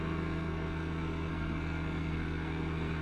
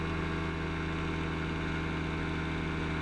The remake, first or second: first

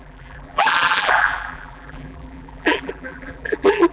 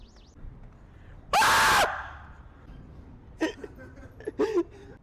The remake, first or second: first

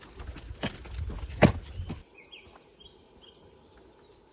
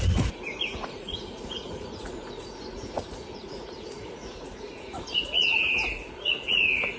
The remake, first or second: second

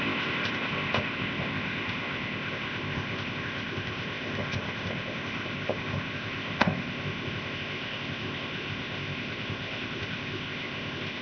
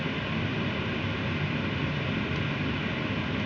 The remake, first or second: first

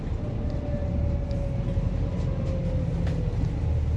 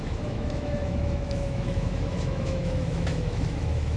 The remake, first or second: second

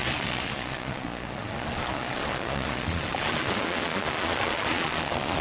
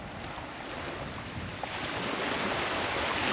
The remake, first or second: first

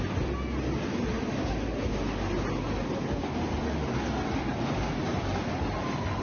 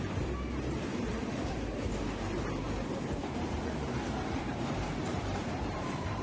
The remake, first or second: second